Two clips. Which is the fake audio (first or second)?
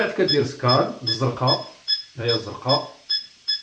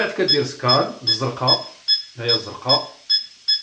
first